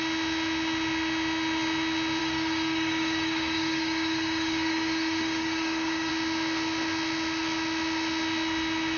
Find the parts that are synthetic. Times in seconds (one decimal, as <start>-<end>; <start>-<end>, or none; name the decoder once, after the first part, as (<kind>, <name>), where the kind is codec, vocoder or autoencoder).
2.2-6.1 (codec, DAC)